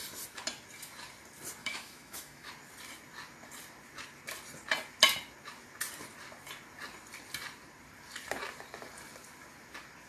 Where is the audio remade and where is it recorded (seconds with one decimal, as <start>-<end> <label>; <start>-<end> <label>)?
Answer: 0.0-1.6 recorded; 1.6-2.5 remade; 2.5-10.1 recorded